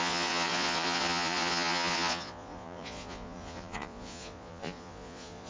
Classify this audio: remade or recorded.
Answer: remade